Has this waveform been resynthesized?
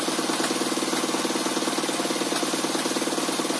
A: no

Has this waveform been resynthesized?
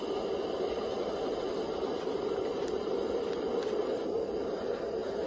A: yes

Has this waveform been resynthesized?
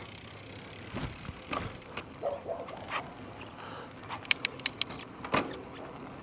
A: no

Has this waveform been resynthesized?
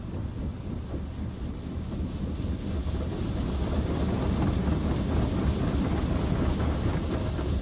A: no